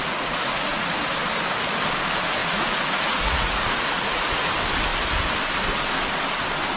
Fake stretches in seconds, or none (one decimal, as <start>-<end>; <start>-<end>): 0.0-0.9; 2.4-4.5